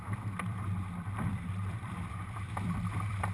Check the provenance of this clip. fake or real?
fake